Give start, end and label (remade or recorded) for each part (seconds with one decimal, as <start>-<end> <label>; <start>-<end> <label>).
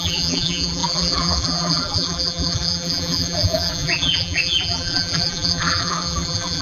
0.0-6.6 remade